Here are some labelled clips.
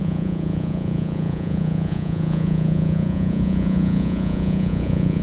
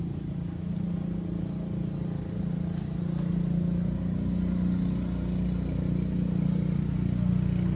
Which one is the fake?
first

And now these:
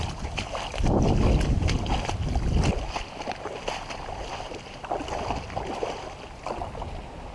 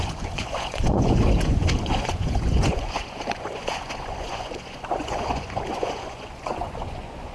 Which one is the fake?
second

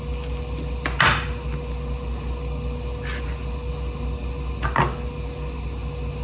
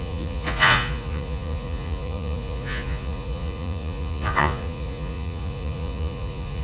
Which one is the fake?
second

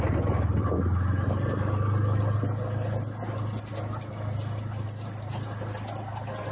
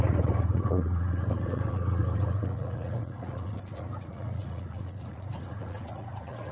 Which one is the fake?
second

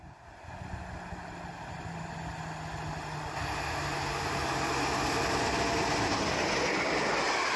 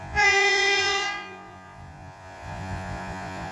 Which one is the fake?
second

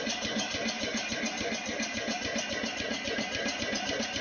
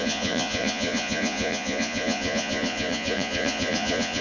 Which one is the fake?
second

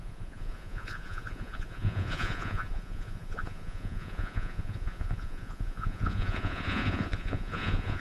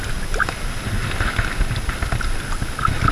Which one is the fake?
first